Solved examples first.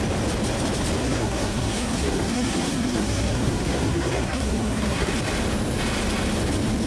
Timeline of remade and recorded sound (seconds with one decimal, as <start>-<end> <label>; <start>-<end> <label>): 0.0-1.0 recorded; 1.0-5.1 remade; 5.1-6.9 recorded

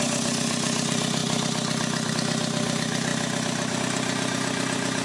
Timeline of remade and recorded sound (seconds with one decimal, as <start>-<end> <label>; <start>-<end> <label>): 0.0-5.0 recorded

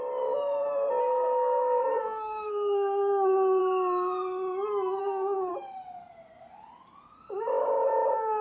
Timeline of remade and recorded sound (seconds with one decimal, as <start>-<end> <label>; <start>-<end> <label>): 0.0-1.0 recorded; 1.0-3.6 remade; 3.6-5.0 recorded; 5.0-5.5 remade; 5.5-8.4 recorded

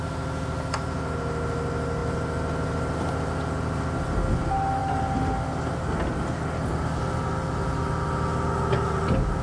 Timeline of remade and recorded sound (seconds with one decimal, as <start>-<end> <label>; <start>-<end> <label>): 0.0-9.4 recorded